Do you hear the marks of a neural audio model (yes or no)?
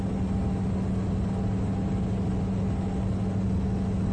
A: no